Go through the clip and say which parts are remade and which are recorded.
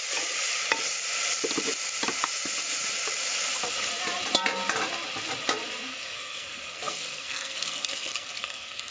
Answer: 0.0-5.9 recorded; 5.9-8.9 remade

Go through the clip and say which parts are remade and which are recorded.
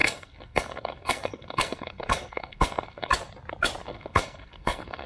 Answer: 0.0-3.1 remade; 3.1-3.8 recorded; 3.8-5.1 remade